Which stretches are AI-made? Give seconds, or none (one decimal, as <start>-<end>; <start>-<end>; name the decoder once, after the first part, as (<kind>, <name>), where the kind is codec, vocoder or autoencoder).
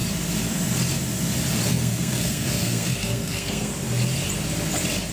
1.7-3.7 (codec, SNAC)